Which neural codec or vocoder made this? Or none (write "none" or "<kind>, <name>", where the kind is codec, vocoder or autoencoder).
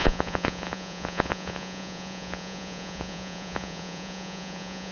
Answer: vocoder, Vocos